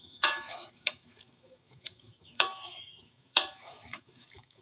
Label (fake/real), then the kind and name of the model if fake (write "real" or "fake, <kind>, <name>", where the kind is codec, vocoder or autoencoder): fake, autoencoder, DAC-VAE